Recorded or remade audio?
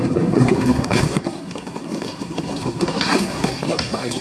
remade